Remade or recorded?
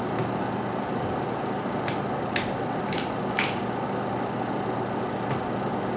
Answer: recorded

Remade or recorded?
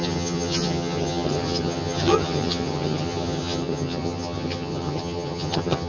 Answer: remade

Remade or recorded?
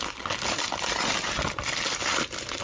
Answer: recorded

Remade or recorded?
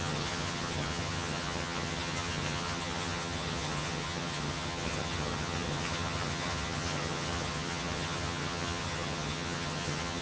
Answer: remade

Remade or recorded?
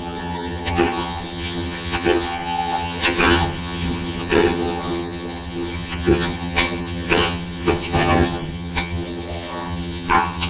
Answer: remade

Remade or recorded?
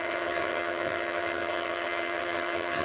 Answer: remade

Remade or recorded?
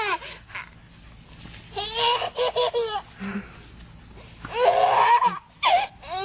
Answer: recorded